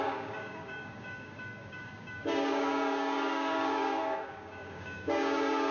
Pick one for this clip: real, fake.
fake